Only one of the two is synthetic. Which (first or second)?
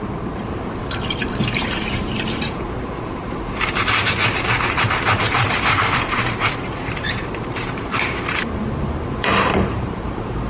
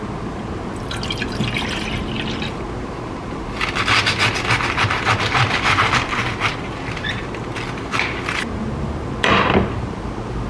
first